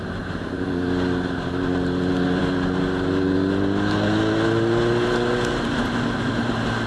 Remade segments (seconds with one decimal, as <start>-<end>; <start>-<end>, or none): none